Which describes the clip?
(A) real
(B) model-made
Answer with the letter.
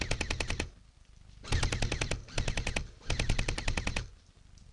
B